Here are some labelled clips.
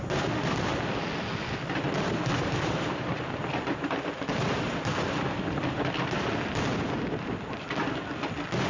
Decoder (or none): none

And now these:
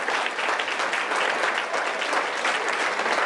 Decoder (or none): none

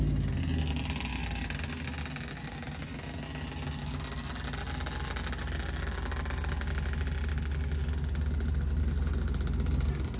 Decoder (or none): none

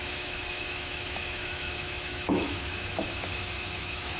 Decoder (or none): autoencoder, DAC-VAE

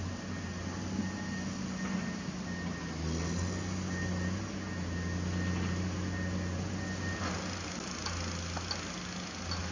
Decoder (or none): none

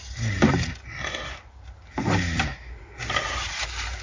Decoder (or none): none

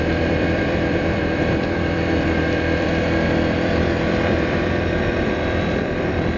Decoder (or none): vocoder, BigVGAN v2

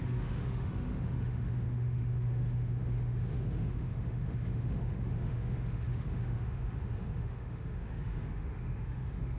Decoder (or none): autoencoder, DAC-VAE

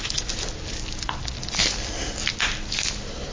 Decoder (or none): none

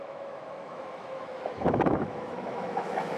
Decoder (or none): autoencoder, DAC-VAE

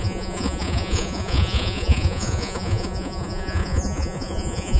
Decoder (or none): vocoder, Vocos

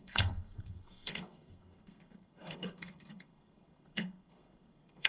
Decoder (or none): codec, SNAC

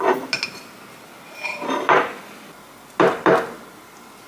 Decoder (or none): none